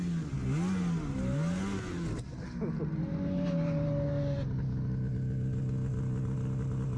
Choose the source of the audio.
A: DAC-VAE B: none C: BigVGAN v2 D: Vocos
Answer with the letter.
B